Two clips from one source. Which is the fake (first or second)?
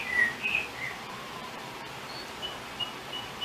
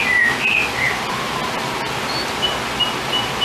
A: first